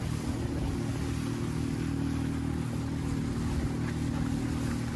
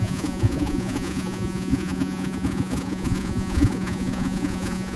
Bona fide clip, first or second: first